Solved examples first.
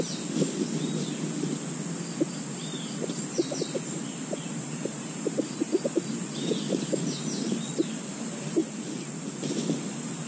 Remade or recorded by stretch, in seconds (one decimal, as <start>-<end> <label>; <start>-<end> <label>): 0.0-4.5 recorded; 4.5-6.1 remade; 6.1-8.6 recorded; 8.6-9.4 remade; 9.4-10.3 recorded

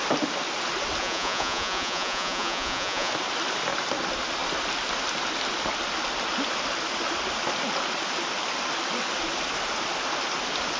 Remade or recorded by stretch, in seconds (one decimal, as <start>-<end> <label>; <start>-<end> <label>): 0.0-1.0 recorded; 1.0-3.1 remade; 3.1-10.8 recorded

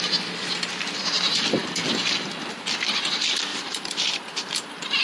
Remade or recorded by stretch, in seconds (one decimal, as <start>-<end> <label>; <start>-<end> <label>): 0.0-3.5 recorded; 3.5-5.0 remade

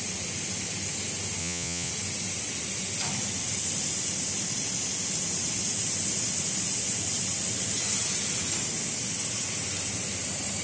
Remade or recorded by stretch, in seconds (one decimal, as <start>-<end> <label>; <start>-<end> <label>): 0.0-1.4 recorded; 1.4-1.9 remade; 1.9-10.6 recorded

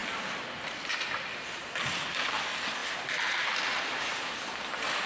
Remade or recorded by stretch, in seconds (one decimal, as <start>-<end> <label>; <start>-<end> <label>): 0.0-5.1 recorded

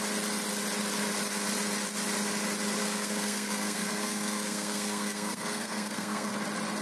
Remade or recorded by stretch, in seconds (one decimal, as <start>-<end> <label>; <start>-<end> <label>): 0.0-2.8 recorded; 2.8-6.3 remade; 6.3-6.8 recorded

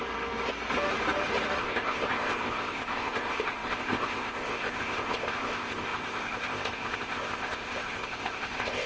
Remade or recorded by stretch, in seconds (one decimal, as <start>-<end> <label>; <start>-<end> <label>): 0.0-1.6 recorded; 1.6-8.9 remade

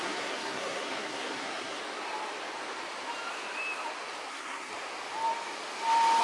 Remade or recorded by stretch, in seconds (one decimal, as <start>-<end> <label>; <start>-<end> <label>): 0.0-1.8 remade; 1.8-4.3 recorded; 4.3-4.7 remade; 4.7-6.2 recorded